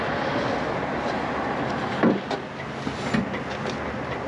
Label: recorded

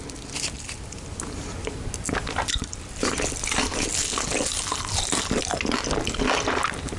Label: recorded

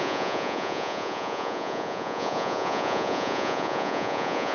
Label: remade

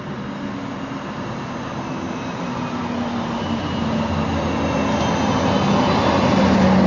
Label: recorded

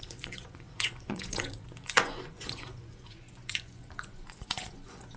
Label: remade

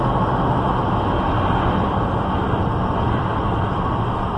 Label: recorded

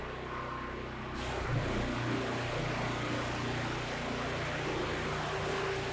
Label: recorded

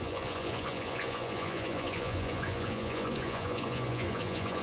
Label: remade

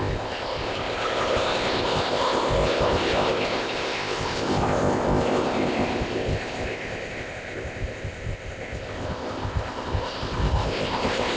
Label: remade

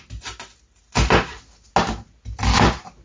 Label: recorded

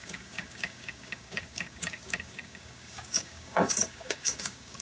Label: remade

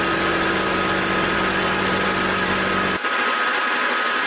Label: recorded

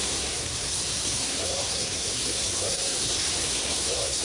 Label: remade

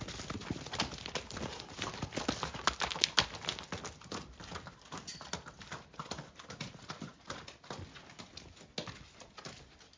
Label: recorded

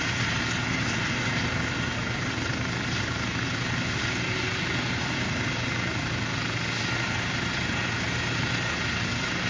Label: recorded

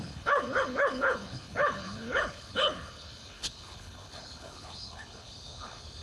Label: remade